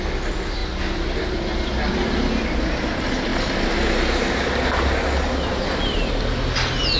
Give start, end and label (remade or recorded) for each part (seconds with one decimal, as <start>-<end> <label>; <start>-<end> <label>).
0.0-7.0 recorded